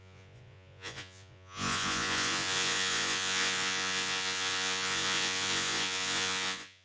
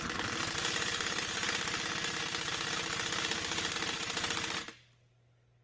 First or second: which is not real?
first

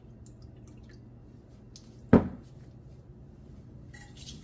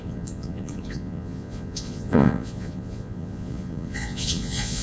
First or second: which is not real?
second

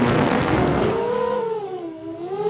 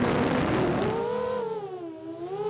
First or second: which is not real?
first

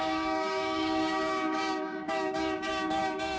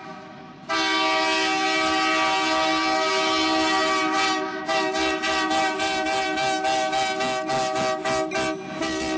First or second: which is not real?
first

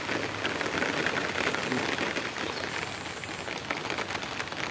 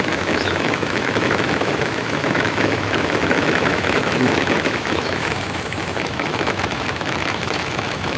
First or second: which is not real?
second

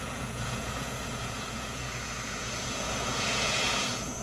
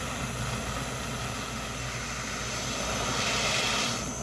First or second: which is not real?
first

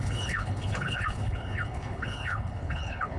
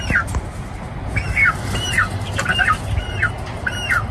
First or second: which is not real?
first